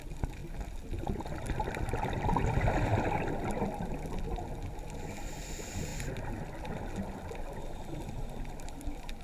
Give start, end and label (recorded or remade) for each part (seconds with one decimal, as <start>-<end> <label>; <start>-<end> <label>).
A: 0.0-9.2 recorded